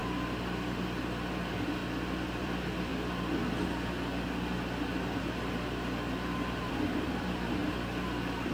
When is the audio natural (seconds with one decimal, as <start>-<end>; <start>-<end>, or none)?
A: 0.0-1.3; 1.8-2.4; 2.9-6.7